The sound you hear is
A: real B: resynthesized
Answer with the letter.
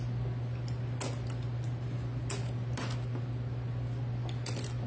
A